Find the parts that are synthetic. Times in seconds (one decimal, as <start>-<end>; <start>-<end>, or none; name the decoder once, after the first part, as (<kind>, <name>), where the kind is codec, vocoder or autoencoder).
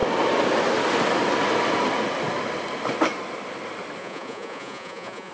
4.0-5.3 (vocoder, Vocos)